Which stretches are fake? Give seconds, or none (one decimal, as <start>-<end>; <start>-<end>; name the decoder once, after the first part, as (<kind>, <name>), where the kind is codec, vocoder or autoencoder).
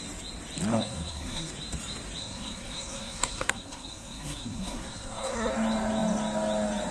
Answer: 0.7-1.5 (codec, SNAC); 2.2-5.5